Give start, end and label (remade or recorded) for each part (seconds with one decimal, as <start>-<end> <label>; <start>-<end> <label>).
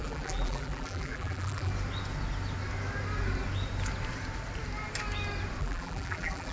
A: 0.0-1.7 remade; 1.7-5.6 recorded; 5.6-6.5 remade